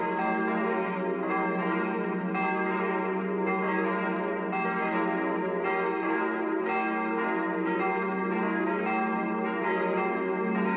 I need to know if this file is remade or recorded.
recorded